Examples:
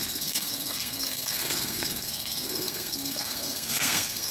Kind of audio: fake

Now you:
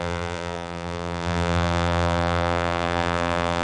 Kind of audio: fake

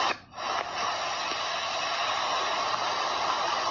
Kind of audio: real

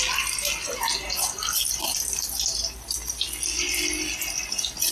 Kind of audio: real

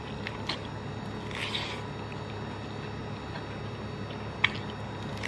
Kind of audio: real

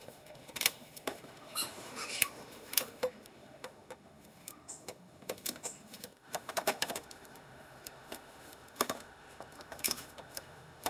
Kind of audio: fake